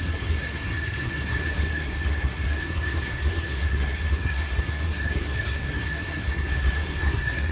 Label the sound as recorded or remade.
remade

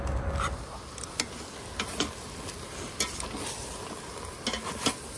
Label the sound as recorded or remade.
recorded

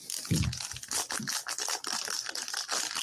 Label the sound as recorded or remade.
recorded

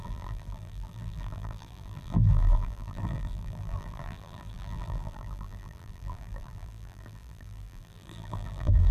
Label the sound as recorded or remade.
remade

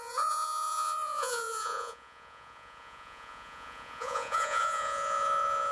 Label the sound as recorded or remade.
remade